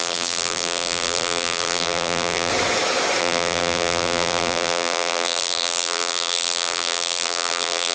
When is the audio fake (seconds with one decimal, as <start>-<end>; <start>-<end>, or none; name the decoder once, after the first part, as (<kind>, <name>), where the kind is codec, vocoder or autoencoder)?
0.0-2.5 (vocoder, BigVGAN v2); 3.2-7.9